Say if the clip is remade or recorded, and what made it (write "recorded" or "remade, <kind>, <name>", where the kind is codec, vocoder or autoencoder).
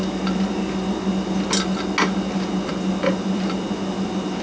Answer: recorded